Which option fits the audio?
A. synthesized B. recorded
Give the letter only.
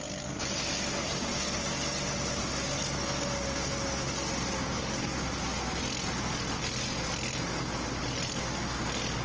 B